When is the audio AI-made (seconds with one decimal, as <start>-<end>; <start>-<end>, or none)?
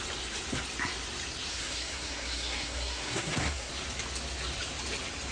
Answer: 1.5-3.7